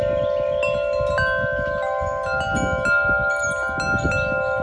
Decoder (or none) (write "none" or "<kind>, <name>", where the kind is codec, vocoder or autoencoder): none